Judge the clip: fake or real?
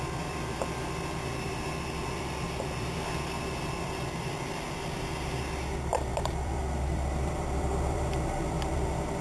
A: fake